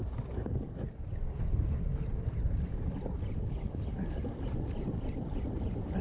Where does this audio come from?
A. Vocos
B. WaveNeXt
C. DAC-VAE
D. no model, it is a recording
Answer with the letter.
D